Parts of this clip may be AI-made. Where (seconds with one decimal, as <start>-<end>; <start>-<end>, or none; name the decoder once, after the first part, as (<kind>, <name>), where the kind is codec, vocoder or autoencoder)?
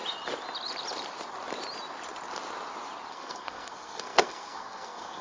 3.1-5.2 (codec, SNAC)